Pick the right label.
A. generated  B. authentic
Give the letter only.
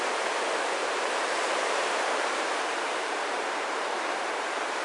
A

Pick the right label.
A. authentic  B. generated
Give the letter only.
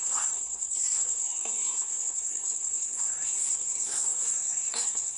B